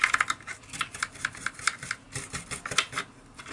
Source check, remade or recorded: recorded